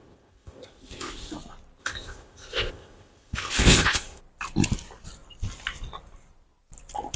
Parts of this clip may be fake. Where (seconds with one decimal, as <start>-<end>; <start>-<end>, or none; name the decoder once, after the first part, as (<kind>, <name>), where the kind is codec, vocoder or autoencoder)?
0.0-1.3 (codec, ZipCodec); 1.8-4.2